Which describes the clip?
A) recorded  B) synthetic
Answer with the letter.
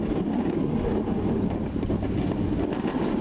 A